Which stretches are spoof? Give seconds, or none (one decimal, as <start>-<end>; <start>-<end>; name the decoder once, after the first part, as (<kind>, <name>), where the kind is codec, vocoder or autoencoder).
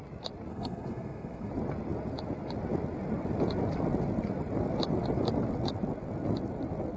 0.5-1.5 (codec, SNAC)